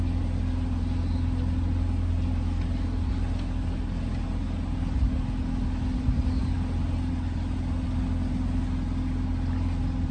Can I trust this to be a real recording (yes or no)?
yes